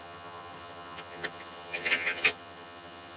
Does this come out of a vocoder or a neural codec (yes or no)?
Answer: yes